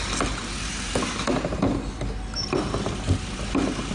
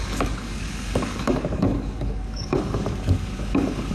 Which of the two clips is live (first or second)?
first